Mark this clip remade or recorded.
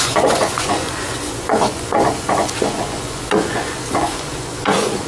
remade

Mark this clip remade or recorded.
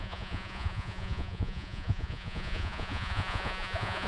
remade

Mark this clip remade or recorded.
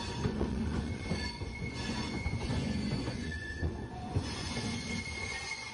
remade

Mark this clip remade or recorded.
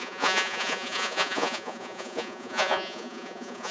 remade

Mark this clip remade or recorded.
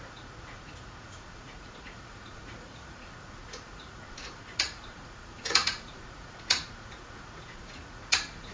remade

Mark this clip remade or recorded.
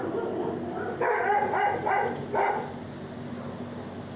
recorded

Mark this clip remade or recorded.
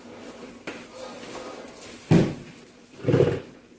recorded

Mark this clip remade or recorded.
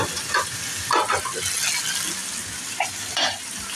recorded